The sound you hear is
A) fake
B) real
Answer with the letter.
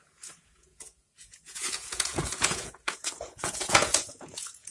A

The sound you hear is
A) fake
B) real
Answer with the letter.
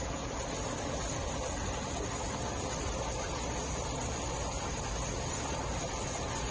B